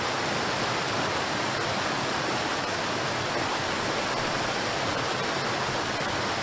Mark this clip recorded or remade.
recorded